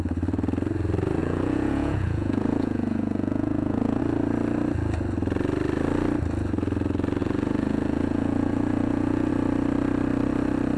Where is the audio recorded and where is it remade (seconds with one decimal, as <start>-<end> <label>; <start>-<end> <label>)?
0.0-1.2 recorded; 1.2-4.0 remade; 4.0-7.2 recorded; 7.2-9.3 remade; 9.3-10.8 recorded